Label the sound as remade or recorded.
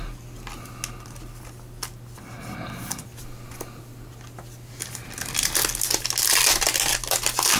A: recorded